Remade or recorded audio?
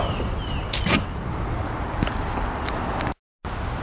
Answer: recorded